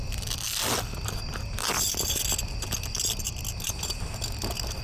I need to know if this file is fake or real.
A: real